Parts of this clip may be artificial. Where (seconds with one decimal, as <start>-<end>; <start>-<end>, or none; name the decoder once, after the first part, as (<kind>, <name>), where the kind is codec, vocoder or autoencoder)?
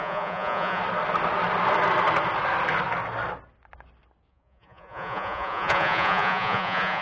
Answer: 0.0-0.8 (vocoder, Vocos); 4.3-7.0